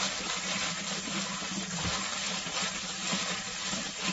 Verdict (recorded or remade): recorded